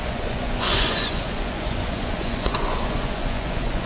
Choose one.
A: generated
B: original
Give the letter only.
A